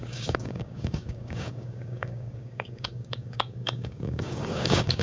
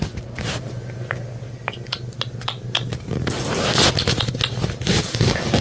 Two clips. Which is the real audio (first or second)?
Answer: second